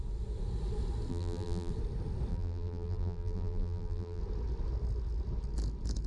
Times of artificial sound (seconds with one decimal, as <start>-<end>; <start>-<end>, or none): 1.1-1.7; 2.3-4.2